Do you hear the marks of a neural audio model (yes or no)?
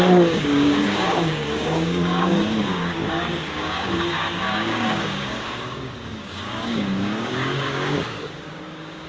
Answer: yes